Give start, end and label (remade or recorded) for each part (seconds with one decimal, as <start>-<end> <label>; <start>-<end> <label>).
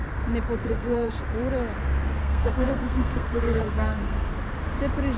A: 0.0-0.6 recorded; 0.6-1.2 remade; 1.2-2.2 recorded; 2.2-4.3 remade; 4.3-5.2 recorded